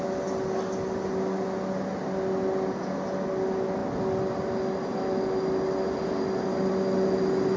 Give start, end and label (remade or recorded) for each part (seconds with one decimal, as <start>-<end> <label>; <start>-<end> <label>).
0.0-7.6 recorded